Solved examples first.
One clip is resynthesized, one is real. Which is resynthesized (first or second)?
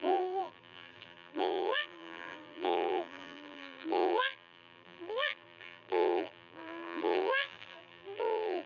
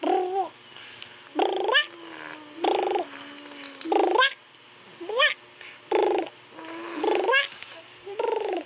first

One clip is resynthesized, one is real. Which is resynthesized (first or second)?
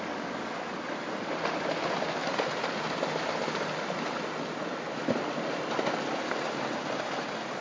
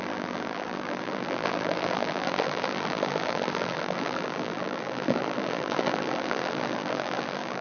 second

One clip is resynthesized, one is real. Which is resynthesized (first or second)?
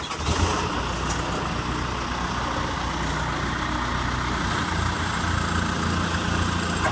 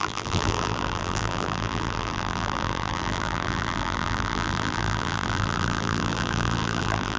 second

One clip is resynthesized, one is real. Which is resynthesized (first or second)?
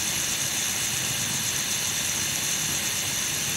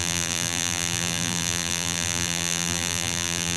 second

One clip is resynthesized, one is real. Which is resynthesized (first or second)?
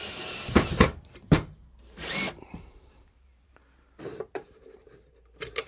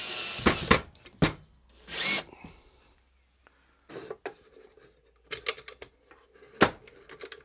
first